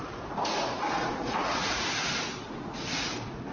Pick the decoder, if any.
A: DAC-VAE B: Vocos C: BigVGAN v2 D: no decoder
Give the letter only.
B